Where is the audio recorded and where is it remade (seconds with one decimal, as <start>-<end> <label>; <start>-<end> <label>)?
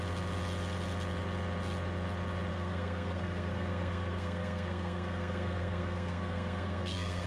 0.0-2.5 recorded; 2.5-7.3 remade